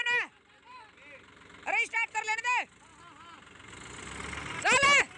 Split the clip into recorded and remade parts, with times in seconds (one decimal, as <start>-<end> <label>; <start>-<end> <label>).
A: 0.0-5.2 recorded